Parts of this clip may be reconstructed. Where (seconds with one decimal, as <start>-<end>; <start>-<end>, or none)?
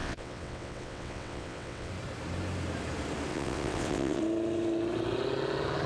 0.0-1.9; 3.3-4.2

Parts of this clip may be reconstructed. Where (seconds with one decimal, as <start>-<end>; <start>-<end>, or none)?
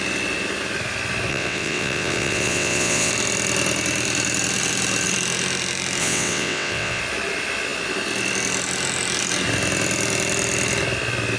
1.3-3.1; 6.0-7.0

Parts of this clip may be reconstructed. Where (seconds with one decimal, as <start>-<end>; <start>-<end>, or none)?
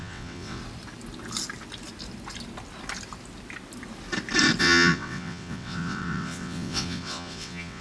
0.0-0.6; 4.6-7.8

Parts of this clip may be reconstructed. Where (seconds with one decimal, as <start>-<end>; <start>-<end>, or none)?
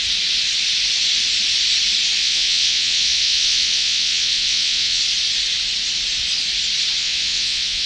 2.2-5.0; 7.0-7.9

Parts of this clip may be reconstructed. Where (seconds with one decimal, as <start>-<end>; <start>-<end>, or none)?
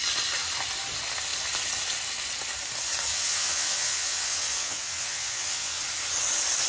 3.1-5.8